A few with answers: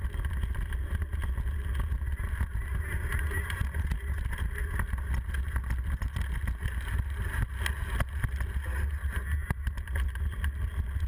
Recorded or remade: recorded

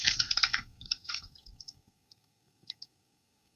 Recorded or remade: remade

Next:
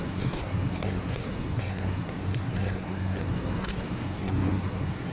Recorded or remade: remade